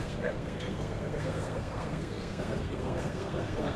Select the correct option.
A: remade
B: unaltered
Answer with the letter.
A